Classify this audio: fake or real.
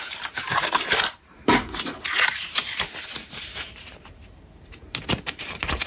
fake